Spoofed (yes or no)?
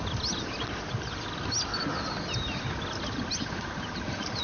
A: no